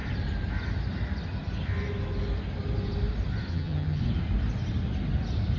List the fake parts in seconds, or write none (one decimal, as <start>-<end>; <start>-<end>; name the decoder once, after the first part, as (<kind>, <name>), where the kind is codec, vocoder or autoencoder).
3.5-4.0 (vocoder, HiFi-GAN)